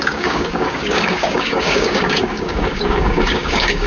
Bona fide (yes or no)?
no